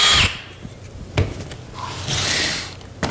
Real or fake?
real